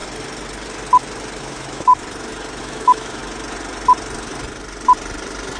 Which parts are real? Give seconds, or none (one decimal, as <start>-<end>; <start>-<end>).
0.0-1.4; 1.9-2.6; 3.2-5.6